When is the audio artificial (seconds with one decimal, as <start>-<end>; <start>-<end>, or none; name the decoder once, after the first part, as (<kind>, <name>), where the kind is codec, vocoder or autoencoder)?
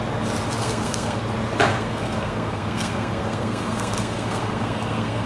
0.6-1.2 (codec, SNAC); 1.7-5.3